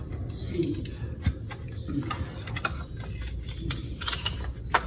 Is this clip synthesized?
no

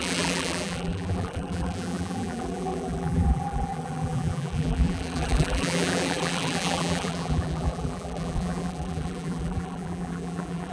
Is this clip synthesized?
yes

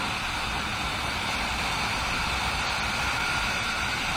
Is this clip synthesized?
yes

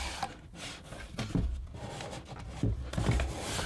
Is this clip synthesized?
no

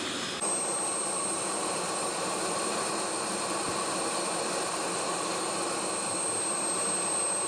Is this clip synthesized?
no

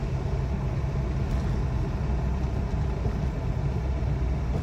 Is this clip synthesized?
no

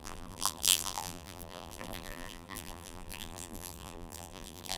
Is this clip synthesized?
yes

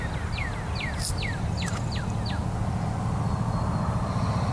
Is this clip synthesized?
no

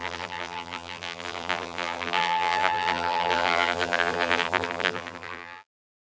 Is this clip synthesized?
yes